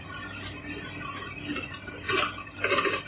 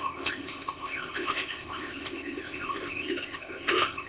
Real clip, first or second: first